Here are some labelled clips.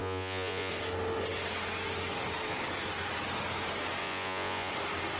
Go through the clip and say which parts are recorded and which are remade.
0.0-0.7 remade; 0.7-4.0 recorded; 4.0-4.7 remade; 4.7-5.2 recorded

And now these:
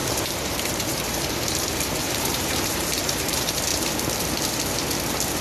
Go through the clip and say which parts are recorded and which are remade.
0.0-3.7 remade; 3.7-5.4 recorded

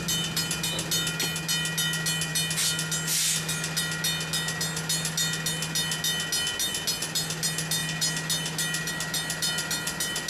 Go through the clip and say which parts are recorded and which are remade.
0.0-10.3 recorded